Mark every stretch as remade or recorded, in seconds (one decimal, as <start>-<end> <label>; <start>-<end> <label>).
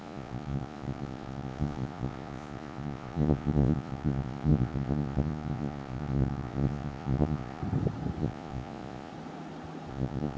0.0-7.6 remade; 7.6-8.2 recorded; 8.2-9.1 remade; 9.1-9.9 recorded; 9.9-10.4 remade